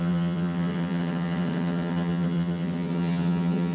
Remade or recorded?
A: remade